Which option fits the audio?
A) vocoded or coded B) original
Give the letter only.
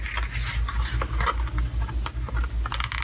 B